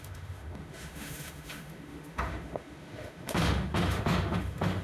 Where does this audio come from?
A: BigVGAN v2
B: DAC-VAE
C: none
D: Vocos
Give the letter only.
B